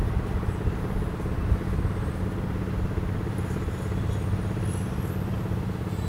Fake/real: real